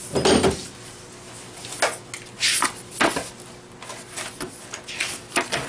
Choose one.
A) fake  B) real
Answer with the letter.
B